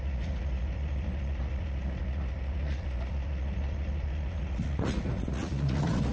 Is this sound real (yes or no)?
no